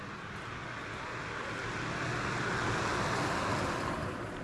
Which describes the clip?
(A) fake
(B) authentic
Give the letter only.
B